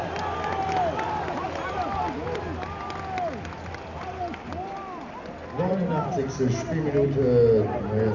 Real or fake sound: real